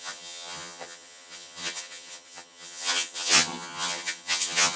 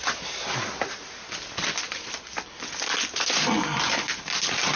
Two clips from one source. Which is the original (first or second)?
second